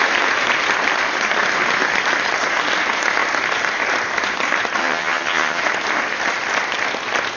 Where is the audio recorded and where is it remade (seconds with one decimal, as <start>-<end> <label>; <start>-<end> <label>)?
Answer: 0.0-4.8 recorded; 4.8-5.6 remade; 5.6-7.4 recorded